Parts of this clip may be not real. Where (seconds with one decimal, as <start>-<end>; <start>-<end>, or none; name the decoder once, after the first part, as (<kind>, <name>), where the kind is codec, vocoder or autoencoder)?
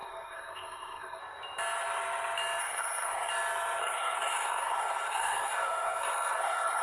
0.0-1.2 (codec, SNAC); 2.6-3.3; 3.8-6.8